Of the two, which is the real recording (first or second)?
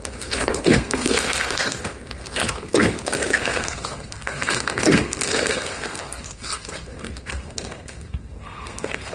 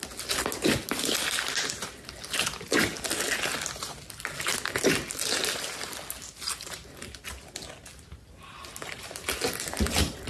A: second